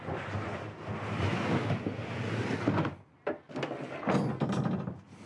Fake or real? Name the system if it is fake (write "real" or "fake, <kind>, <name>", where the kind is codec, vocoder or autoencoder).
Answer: real